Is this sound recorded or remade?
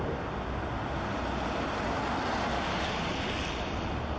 recorded